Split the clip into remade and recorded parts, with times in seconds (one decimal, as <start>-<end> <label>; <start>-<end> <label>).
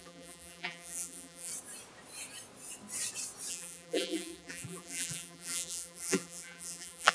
0.0-1.5 remade; 1.5-3.5 recorded; 3.5-7.1 remade